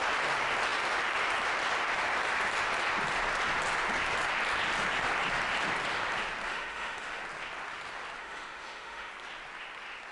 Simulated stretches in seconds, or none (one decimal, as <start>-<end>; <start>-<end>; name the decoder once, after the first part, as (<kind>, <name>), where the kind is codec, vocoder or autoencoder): 6.5-7.2 (autoencoder, DAC-VAE); 8.2-9.1